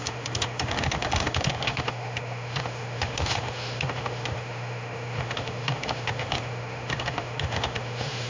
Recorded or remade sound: remade